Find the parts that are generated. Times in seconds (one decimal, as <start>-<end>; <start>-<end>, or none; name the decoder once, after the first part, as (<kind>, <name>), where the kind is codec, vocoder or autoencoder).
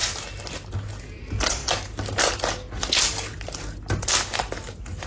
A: none